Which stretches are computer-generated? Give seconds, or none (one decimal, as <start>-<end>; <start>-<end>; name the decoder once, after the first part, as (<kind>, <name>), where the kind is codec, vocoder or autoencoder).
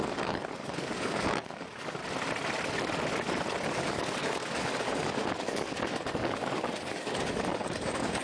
0.0-2.0 (codec, DAC); 3.7-8.2